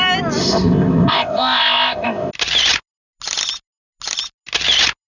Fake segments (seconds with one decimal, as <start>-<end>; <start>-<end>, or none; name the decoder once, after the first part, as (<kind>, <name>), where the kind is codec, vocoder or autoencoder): 0.4-2.3 (codec, ZipCodec)